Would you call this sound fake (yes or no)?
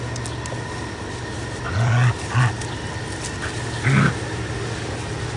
no